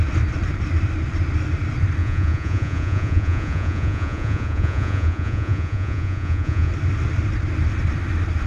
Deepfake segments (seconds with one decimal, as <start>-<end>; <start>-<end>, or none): 2.0-6.7